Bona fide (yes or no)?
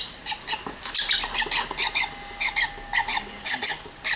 yes